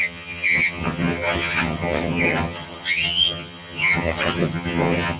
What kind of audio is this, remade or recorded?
remade